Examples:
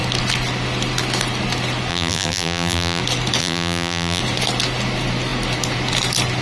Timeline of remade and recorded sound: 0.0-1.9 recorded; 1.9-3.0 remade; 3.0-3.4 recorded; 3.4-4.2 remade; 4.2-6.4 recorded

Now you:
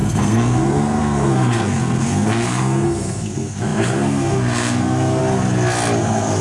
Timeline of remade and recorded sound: 0.0-5.2 remade; 5.2-6.0 recorded; 6.0-6.4 remade

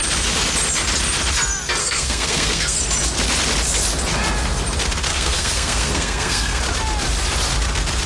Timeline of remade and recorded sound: 0.0-1.8 recorded; 1.8-2.8 remade; 2.8-5.1 recorded; 5.1-6.6 remade; 6.6-8.1 recorded

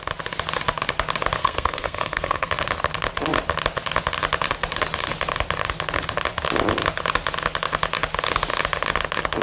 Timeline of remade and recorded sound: 0.0-1.4 recorded; 1.4-2.5 remade; 2.5-9.4 recorded

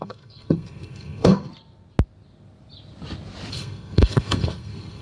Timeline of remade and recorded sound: 0.0-1.5 remade; 1.5-3.5 recorded; 3.5-5.0 remade